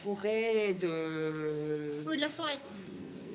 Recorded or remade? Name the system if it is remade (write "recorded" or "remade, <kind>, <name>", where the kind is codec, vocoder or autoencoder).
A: remade, codec, SNAC